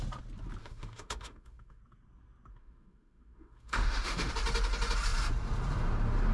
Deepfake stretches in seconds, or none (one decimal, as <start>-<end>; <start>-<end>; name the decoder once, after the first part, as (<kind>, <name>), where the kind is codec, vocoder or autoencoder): 0.6-1.8 (autoencoder, DAC-VAE); 2.5-4.3